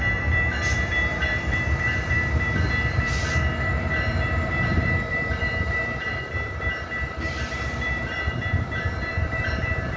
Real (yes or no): no